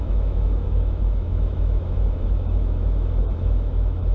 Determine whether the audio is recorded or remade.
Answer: remade